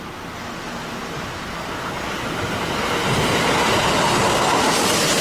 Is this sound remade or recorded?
recorded